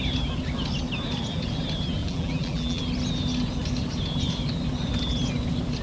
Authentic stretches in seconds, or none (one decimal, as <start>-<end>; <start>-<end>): 0.0-2.0; 2.8-5.8